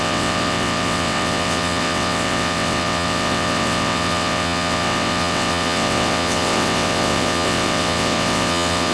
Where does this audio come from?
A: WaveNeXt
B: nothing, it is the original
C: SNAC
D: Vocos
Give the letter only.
A